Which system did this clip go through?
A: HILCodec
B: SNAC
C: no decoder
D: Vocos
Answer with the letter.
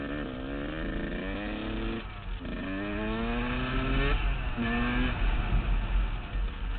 C